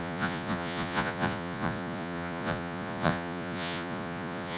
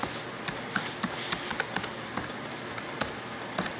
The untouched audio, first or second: second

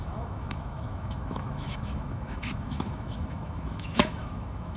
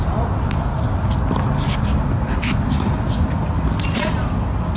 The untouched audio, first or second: second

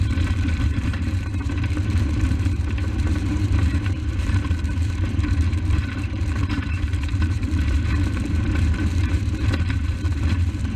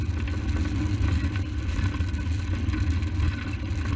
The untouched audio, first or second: second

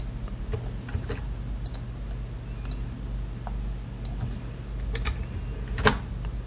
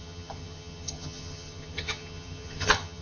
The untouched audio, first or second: first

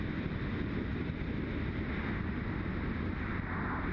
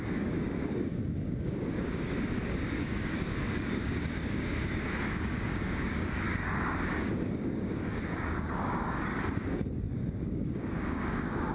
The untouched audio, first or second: first